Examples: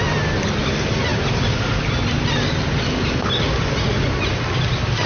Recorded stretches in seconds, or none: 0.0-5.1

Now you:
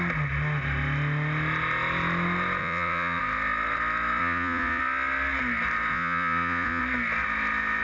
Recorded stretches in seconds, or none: 0.0-2.6; 3.2-4.2; 4.8-5.9; 6.8-7.8

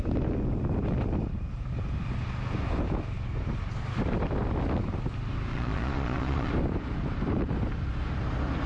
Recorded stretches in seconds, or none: 0.0-5.5; 6.5-8.7

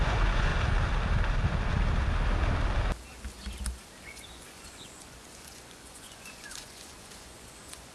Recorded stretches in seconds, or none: 0.5-4.0

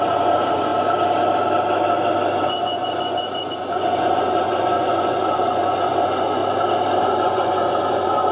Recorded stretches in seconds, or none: 0.7-2.4; 6.4-7.0

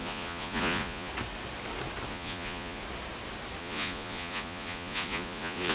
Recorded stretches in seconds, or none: 1.1-2.1; 2.8-3.6